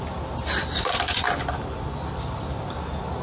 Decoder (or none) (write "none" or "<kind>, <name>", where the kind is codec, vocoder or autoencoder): none